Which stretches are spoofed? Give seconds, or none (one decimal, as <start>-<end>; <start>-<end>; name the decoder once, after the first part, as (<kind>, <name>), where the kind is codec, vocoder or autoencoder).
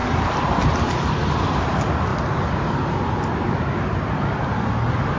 none